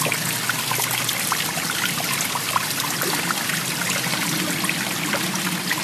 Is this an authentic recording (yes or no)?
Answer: yes